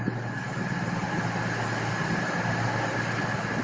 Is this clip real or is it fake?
real